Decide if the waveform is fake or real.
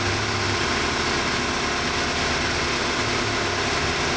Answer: real